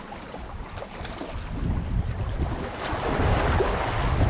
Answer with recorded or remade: recorded